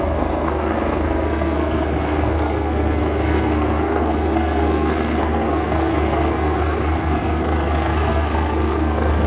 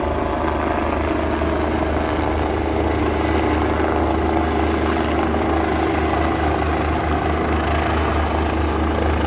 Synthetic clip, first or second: first